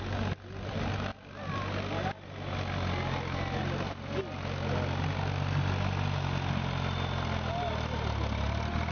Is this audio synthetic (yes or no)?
no